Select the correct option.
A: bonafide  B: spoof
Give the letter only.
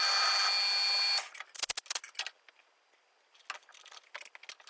A